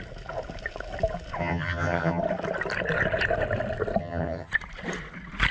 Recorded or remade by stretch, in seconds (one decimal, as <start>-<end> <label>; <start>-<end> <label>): 0.0-1.4 recorded; 1.4-2.2 remade; 2.2-4.0 recorded; 4.0-4.5 remade; 4.5-5.5 recorded